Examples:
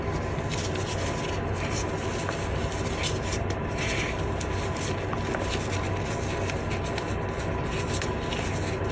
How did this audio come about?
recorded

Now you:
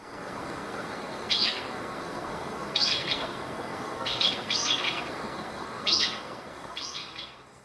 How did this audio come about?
remade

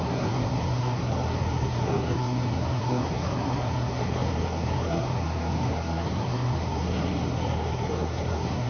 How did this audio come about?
remade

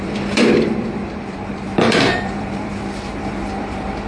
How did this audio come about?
remade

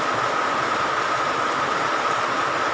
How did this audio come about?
recorded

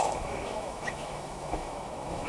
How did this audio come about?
remade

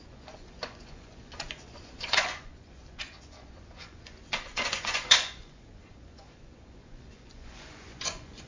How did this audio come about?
remade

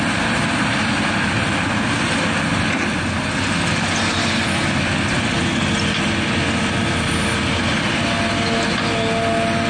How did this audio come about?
recorded